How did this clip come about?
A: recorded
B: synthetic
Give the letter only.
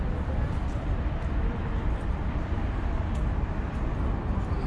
A